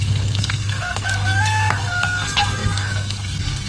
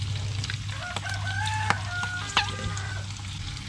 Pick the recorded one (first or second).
second